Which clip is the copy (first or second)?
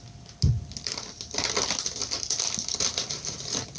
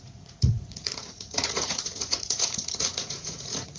second